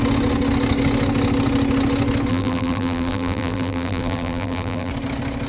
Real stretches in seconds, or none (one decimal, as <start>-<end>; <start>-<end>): 0.0-2.3; 4.9-5.5